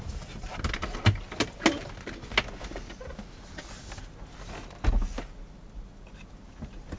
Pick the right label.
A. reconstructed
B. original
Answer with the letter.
B